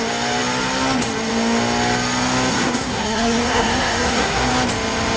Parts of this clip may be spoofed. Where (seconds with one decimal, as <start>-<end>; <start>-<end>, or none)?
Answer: 2.5-4.5